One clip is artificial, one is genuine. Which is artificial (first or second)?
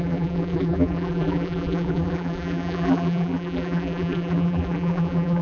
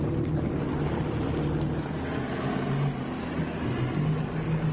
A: first